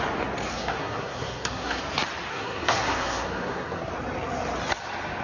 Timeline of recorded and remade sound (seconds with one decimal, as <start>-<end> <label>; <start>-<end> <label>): 0.0-0.5 recorded; 0.5-1.8 remade; 1.8-2.3 recorded; 2.3-3.9 remade; 3.9-5.2 recorded